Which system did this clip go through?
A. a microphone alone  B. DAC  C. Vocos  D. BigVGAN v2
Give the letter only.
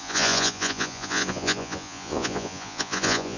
C